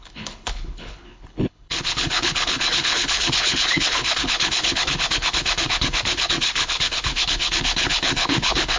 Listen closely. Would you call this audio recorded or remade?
remade